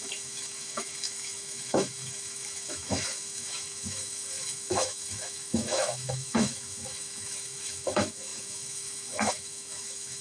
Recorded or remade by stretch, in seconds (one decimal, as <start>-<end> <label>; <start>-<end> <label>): 0.0-10.2 remade